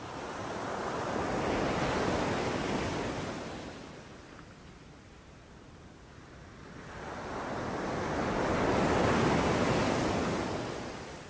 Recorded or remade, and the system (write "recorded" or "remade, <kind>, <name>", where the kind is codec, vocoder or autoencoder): recorded